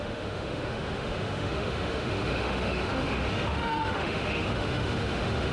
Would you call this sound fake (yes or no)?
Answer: yes